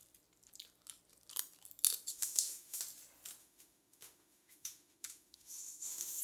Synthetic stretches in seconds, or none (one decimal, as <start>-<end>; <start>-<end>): 2.1-2.8; 3.4-6.2